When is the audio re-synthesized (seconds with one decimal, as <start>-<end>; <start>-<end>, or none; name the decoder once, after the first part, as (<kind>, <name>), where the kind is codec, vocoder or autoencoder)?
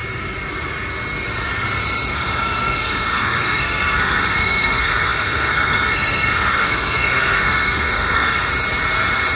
2.1-8.5 (codec, SNAC)